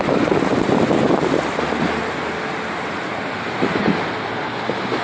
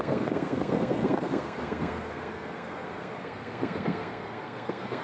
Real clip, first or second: first